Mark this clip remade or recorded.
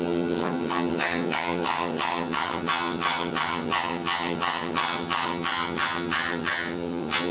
remade